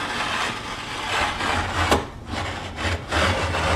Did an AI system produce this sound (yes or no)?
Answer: no